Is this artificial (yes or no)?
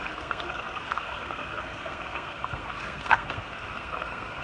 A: yes